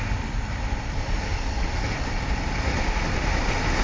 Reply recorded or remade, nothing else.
recorded